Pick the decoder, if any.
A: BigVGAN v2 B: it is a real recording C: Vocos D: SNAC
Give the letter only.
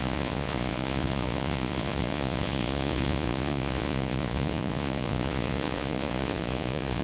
C